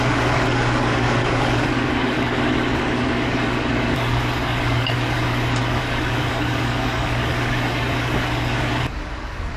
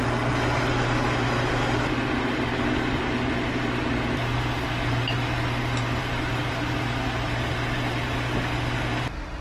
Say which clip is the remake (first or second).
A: first